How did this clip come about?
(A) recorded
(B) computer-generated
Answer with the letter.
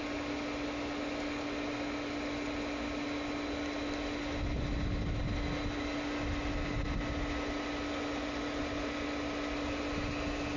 A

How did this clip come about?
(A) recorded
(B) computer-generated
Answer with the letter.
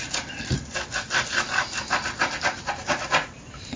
A